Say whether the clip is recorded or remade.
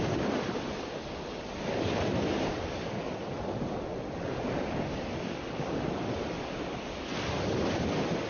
recorded